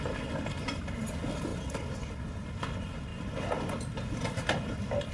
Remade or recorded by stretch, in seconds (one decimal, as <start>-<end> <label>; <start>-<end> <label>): 0.0-1.5 recorded; 1.5-2.1 remade; 2.1-3.1 recorded; 3.1-5.1 remade